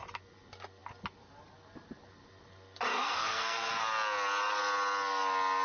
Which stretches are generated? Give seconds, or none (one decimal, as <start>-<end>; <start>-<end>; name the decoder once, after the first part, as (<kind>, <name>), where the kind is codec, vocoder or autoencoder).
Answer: 2.9-3.7 (codec, SNAC)